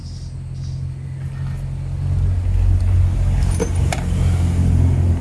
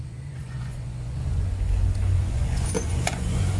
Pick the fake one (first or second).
second